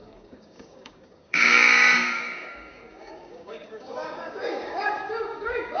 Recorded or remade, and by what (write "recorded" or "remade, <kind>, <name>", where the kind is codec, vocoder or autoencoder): remade, codec, DAC